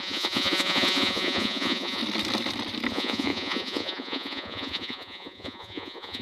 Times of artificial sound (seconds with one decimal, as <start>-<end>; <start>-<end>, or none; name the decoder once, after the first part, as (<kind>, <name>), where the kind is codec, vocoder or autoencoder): 0.0-2.0 (vocoder, Vocos); 2.9-6.2